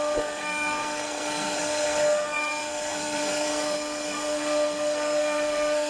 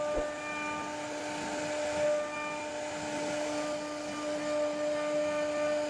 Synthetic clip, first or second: first